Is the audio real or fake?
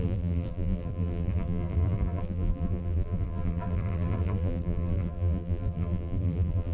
fake